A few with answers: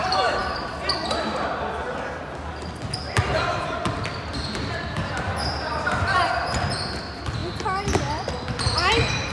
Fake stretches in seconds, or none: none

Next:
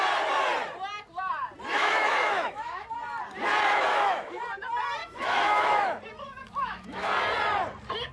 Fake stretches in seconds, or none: 1.7-2.9; 3.9-4.4; 5.0-6.0; 6.4-7.1

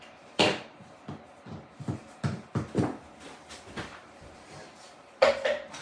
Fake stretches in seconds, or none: none